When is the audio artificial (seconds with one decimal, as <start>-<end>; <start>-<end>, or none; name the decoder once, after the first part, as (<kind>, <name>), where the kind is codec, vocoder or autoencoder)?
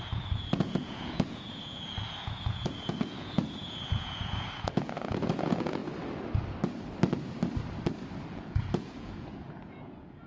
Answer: 0.0-5.8 (vocoder, Vocos); 8.3-10.3